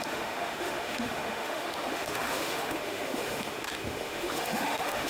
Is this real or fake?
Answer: fake